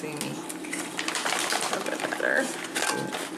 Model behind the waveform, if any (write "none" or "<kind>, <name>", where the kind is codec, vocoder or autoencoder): none